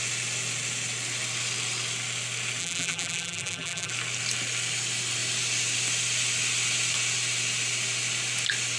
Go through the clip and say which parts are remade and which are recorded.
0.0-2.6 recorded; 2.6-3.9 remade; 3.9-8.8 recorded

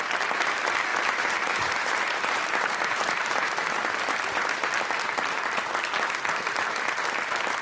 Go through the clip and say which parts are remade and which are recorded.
0.0-0.9 recorded; 0.9-3.5 remade; 3.5-7.6 recorded

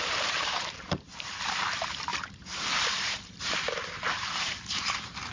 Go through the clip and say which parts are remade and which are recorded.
0.0-5.3 remade

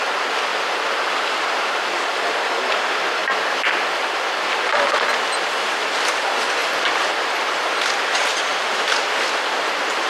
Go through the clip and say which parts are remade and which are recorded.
0.0-0.5 recorded; 0.5-1.7 remade; 1.7-3.2 recorded; 3.2-4.9 remade; 4.9-6.6 recorded; 6.6-8.1 remade; 8.1-8.5 recorded; 8.5-9.7 remade; 9.7-10.1 recorded

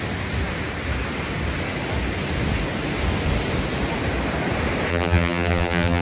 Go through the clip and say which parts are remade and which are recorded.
0.0-4.9 recorded; 4.9-6.0 remade

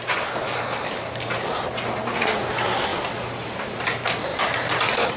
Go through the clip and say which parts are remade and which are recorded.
0.0-5.2 recorded